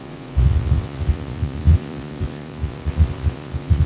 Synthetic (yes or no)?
yes